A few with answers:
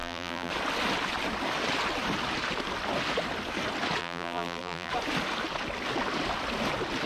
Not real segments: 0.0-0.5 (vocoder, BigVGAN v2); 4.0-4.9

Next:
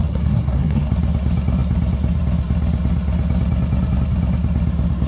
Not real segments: 0.0-0.9 (codec, SNAC)

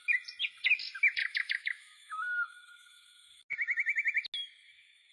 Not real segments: 1.2-3.4 (autoencoder, DAC-VAE); 4.4-5.1

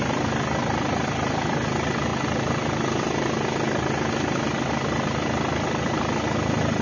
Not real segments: none

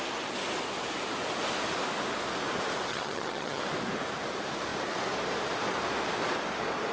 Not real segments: 2.9-3.6 (vocoder, HiFi-GAN)

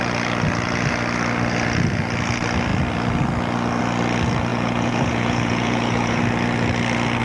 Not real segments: 4.5-6.2 (vocoder, Vocos)